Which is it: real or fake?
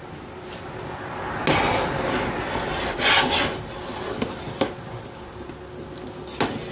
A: real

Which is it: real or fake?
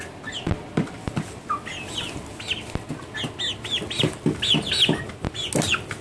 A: real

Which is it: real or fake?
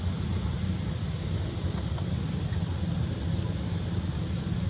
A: real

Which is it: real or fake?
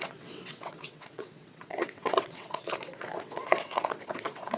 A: fake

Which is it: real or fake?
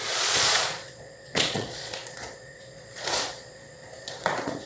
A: fake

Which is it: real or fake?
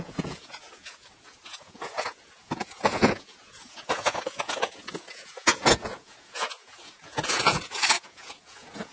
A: fake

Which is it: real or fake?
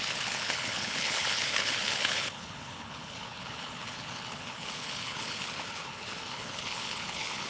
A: fake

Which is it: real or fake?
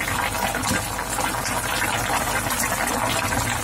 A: real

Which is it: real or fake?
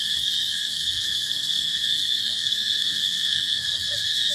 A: fake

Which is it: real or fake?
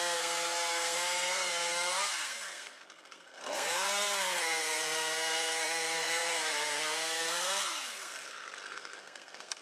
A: fake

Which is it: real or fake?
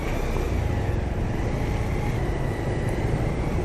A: real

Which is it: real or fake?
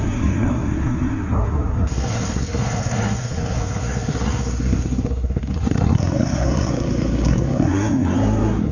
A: fake